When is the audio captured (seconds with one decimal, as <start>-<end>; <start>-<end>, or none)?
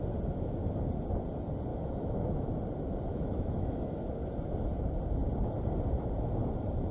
0.0-1.7; 2.5-3.1; 4.1-6.9